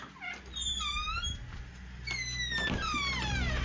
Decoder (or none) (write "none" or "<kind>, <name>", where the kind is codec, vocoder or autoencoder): none